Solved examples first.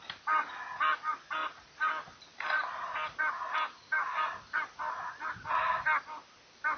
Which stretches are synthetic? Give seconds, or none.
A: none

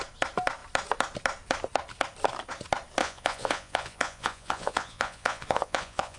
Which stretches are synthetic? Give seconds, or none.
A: 3.0-6.2 (vocoder, Vocos)

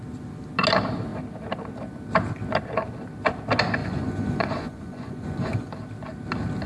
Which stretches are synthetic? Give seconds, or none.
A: 3.8-5.7 (vocoder, Vocos)

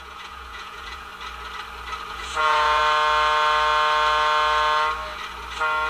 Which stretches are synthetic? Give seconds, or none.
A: 0.0-1.1 (vocoder, Vocos); 2.1-2.8

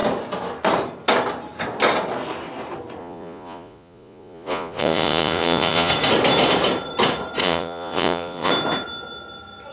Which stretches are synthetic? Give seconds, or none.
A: 3.0-5.9 (vocoder, Vocos); 7.4-8.5

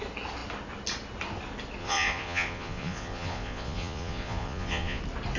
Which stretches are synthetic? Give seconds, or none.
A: 1.8-5.0 (vocoder, Vocos)